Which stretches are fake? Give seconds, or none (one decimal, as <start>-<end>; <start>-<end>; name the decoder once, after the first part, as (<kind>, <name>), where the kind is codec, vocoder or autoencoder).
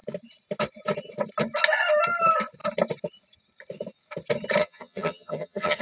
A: 4.6-5.8 (vocoder, HiFi-GAN)